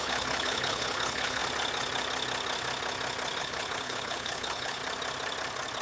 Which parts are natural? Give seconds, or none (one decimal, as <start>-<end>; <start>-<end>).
1.4-3.4; 4.8-5.8